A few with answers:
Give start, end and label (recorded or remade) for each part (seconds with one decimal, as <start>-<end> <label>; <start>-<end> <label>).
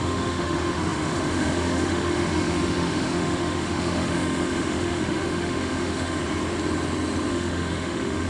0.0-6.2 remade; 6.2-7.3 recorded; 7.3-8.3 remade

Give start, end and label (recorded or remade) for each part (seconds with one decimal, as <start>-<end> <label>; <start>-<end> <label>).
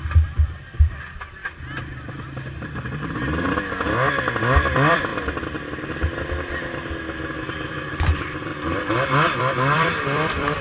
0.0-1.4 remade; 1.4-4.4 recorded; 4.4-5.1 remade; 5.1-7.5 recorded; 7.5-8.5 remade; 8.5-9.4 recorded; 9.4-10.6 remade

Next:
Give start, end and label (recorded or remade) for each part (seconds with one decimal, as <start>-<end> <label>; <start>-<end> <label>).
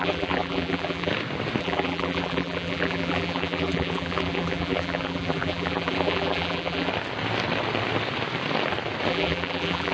0.0-1.1 remade; 1.1-1.6 recorded; 1.6-6.9 remade; 6.9-9.1 recorded; 9.1-9.9 remade